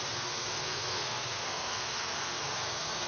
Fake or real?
fake